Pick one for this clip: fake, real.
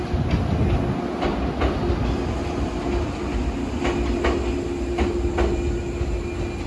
real